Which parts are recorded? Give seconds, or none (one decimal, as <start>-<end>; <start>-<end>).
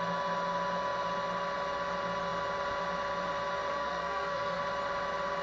0.0-3.7; 4.6-5.4